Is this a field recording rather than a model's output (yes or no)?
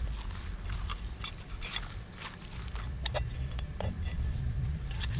yes